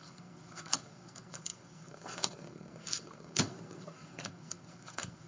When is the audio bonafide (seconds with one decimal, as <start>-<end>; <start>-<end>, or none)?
none